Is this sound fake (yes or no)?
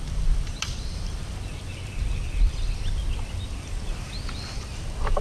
yes